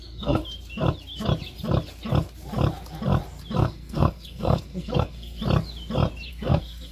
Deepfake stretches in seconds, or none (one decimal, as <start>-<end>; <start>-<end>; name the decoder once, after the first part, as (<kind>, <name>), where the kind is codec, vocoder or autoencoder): 0.0-0.4 (codec, SNAC); 3.6-5.4; 6.3-6.9